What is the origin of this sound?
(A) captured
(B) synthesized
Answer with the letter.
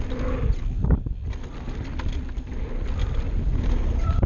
A